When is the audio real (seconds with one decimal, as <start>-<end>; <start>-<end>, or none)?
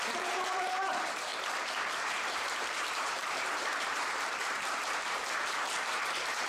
1.3-2.0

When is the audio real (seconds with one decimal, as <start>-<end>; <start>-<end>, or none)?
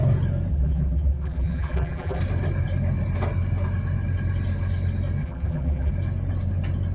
0.0-0.5; 2.2-5.2; 5.9-6.9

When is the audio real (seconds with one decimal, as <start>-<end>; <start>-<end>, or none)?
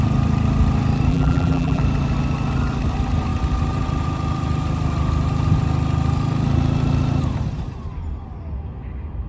0.0-1.1; 1.8-9.3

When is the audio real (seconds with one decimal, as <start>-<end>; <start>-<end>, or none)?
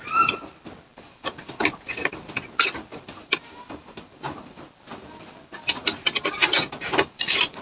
0.0-0.9; 2.2-2.9; 4.2-6.4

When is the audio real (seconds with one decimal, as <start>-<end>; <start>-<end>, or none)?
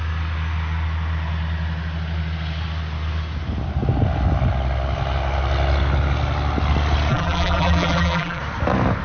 0.0-7.1; 8.4-9.0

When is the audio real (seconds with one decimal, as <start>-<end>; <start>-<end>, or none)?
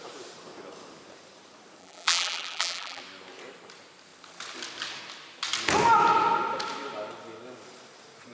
0.0-1.8; 3.0-8.3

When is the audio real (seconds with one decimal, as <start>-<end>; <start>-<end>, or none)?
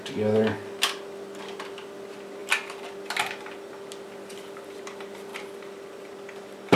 0.0-6.8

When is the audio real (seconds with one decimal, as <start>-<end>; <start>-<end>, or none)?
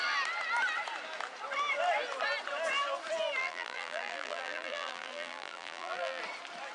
0.0-3.4; 6.2-6.7